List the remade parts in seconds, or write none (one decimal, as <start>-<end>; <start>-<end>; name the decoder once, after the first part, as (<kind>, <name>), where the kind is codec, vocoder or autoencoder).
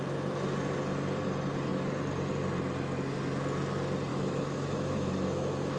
4.1-5.8 (autoencoder, DAC-VAE)